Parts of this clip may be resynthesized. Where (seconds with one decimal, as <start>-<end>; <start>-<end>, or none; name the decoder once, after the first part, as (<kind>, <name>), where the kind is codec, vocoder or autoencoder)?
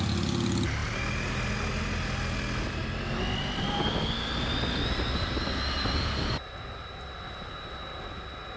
none